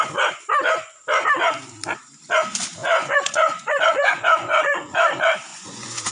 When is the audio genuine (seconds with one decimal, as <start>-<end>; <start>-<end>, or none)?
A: 0.0-2.8; 5.1-5.5